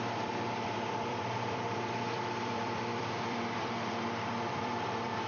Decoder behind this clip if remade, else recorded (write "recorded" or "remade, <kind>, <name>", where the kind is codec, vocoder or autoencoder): remade, vocoder, BigVGAN v2